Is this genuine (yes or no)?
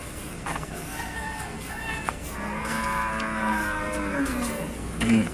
no